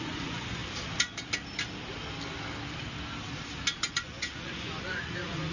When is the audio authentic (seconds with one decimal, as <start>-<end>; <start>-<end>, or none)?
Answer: 0.6-3.9